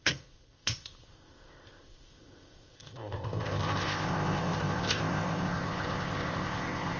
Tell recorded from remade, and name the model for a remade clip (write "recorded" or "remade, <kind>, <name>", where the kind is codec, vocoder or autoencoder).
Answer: remade, codec, ZipCodec